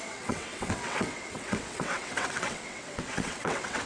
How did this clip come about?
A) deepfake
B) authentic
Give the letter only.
A